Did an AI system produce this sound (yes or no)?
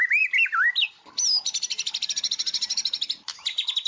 no